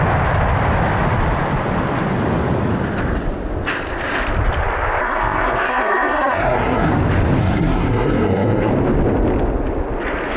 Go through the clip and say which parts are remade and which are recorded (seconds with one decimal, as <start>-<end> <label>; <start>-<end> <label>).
0.0-5.0 recorded; 5.0-6.9 remade; 6.9-7.4 recorded; 7.4-8.7 remade; 8.7-10.4 recorded